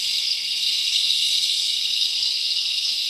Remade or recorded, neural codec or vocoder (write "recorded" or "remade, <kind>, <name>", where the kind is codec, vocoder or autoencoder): remade, codec, SNAC